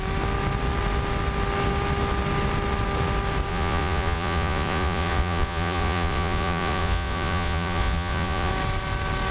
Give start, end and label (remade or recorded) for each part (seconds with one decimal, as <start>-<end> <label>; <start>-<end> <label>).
0.0-3.5 recorded; 3.5-8.5 remade; 8.5-9.3 recorded